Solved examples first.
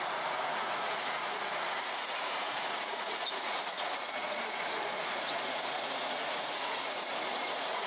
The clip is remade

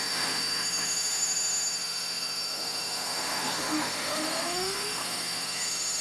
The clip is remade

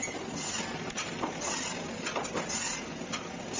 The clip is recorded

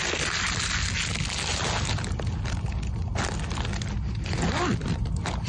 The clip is recorded